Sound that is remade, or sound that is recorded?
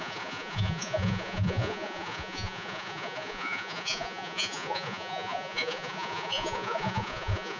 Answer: remade